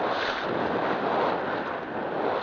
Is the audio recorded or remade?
recorded